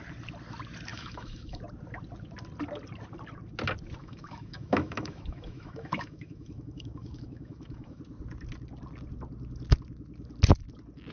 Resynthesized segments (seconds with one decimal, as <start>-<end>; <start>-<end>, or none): 0.9-1.6; 4.0-8.0